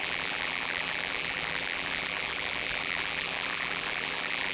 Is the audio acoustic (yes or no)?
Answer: no